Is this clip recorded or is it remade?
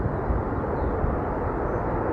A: recorded